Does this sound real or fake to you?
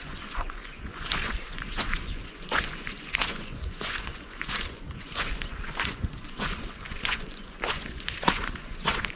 fake